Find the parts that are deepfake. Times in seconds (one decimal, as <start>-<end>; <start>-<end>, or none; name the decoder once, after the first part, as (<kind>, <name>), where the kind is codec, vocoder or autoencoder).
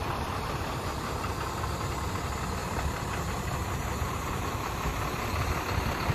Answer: 0.0-1.3 (vocoder, BigVGAN v2); 2.6-4.5; 4.9-5.5